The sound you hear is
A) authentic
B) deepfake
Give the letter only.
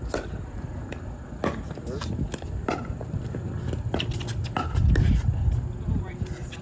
A